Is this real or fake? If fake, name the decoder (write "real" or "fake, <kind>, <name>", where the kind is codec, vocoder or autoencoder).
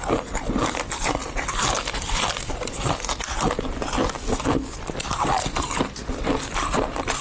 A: real